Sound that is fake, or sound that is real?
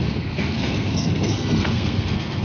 fake